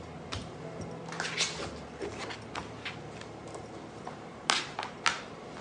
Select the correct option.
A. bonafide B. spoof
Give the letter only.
A